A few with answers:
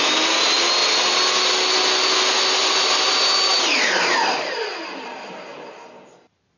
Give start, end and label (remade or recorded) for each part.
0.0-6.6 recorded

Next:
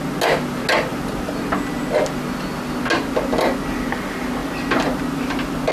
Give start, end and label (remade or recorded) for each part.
0.0-5.7 recorded

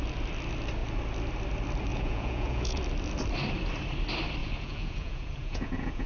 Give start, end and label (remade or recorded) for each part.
0.0-1.9 recorded; 1.9-2.8 remade; 2.8-4.4 recorded; 4.4-6.1 remade

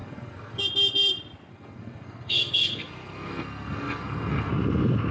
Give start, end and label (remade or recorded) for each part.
0.0-0.6 remade; 0.6-1.5 recorded; 1.5-4.5 remade; 4.5-5.1 recorded

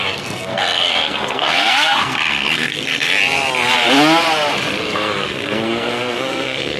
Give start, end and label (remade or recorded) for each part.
0.0-3.1 remade; 3.1-4.8 recorded; 4.8-6.8 remade